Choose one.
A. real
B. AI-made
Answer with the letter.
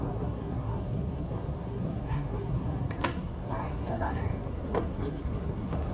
B